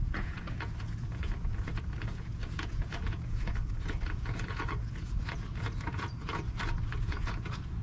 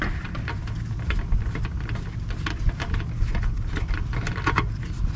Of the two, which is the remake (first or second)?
first